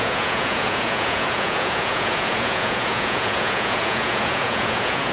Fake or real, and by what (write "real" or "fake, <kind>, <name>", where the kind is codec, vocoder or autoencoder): fake, vocoder, Vocos